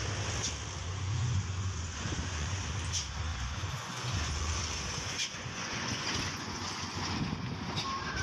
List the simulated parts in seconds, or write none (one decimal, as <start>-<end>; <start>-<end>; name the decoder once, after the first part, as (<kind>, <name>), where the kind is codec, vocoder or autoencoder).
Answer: 0.8-2.6 (vocoder, Vocos); 3.3-7.1